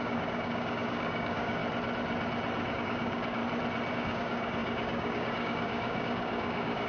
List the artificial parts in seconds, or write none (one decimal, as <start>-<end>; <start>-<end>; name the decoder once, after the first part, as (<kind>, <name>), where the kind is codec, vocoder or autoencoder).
0.0-1.6 (codec, DAC); 2.7-3.4; 3.9-6.9